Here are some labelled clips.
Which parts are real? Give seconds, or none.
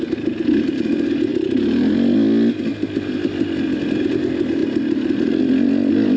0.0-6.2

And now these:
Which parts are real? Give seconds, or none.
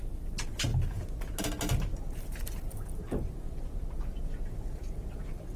0.0-5.6